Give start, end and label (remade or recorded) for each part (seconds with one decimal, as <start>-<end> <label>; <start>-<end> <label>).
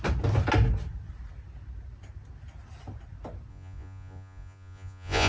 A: 0.0-3.5 recorded; 3.5-5.3 remade